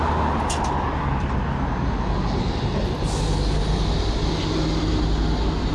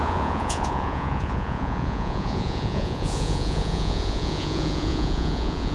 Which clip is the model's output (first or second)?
second